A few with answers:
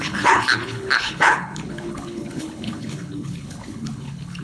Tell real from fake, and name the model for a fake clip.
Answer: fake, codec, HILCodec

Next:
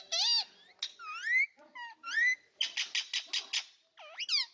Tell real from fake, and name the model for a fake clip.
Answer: real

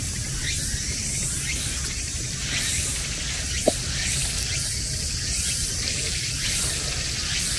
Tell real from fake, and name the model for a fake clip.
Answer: real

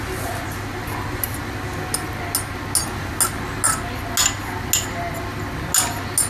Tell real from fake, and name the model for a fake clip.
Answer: real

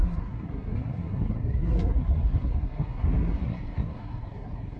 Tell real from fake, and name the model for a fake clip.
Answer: fake, codec, SNAC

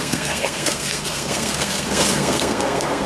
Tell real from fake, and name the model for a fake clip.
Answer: fake, codec, SNAC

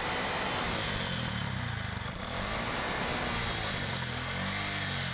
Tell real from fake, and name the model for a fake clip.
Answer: real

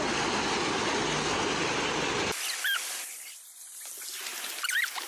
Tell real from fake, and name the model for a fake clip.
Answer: real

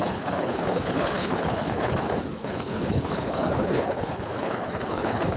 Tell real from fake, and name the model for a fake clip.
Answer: fake, codec, HILCodec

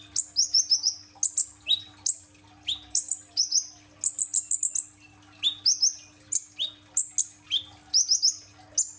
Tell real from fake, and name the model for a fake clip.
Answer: real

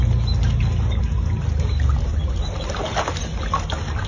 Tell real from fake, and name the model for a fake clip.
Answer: real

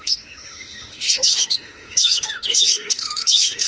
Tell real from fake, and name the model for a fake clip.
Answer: fake, autoencoder, DAC-VAE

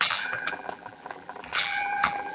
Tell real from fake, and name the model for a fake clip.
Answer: fake, vocoder, BigVGAN v2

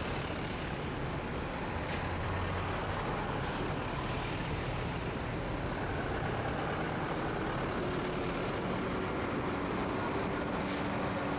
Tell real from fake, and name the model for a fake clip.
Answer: real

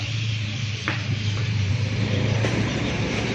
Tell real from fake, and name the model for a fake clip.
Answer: fake, vocoder, BigVGAN v2